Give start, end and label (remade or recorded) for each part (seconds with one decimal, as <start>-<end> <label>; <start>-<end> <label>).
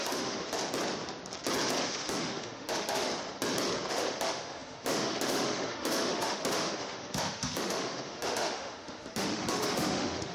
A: 0.0-0.6 remade; 0.6-1.8 recorded; 1.8-3.1 remade; 3.1-3.9 recorded; 3.9-10.3 remade